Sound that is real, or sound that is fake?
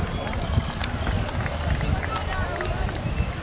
real